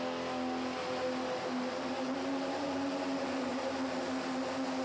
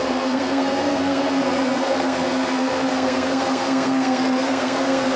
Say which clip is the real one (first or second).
first